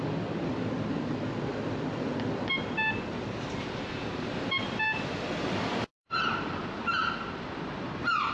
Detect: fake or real fake